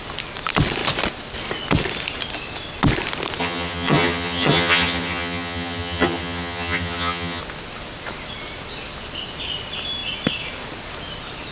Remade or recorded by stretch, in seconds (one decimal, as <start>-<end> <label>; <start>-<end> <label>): 0.0-3.4 recorded; 3.4-7.4 remade; 7.4-11.5 recorded